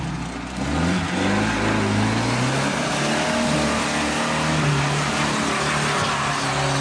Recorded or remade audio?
recorded